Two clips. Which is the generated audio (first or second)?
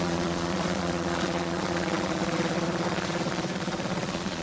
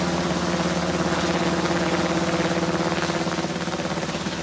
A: first